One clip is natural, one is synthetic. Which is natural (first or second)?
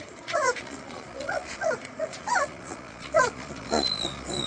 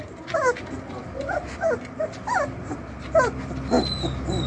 second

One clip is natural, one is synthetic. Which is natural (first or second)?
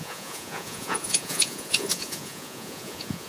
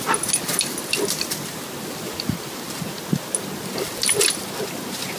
second